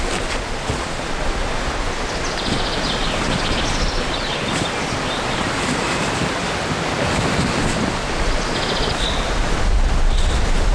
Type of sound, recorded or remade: recorded